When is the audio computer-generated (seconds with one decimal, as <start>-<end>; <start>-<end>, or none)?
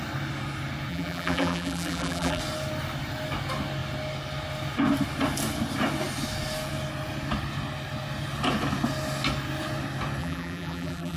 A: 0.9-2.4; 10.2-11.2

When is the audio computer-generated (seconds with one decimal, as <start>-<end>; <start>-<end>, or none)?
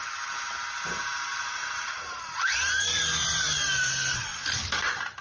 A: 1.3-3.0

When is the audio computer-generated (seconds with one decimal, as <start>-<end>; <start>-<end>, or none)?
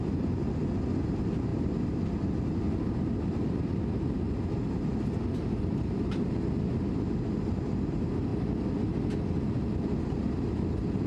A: 1.5-2.7